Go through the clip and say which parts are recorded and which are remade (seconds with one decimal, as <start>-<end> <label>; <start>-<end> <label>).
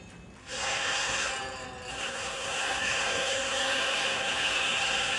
0.0-0.4 recorded; 0.4-1.3 remade; 1.3-1.9 recorded; 1.9-5.2 remade